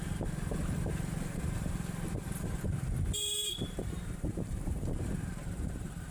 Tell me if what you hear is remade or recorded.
remade